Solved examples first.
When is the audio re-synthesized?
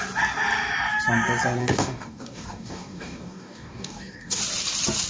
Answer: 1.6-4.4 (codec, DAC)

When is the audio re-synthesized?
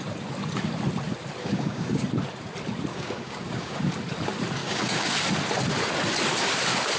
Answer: 1.4-2.0 (codec, DAC); 2.9-3.9; 4.6-5.1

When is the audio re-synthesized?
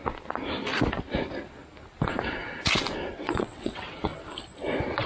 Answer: 3.1-4.1 (vocoder, WaveNeXt)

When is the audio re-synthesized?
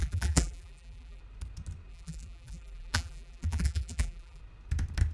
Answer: 0.0-1.2 (vocoder, BigVGAN v2); 1.9-4.4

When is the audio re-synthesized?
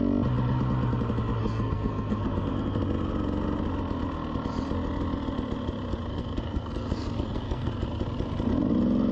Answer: 1.4-2.8 (codec, SNAC); 6.1-7.7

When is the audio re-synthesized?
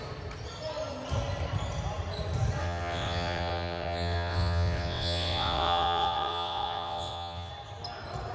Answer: 2.6-7.5 (vocoder, WaveNeXt)